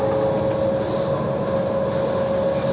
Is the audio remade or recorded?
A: recorded